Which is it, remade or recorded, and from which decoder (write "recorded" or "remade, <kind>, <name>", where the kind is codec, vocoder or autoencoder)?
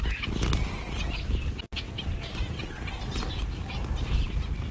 recorded